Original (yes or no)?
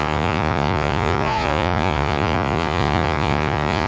no